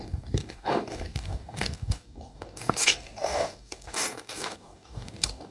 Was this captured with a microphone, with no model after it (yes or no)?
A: no